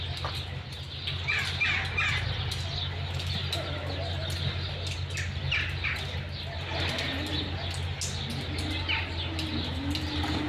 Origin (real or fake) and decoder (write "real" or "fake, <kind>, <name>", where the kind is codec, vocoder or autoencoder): real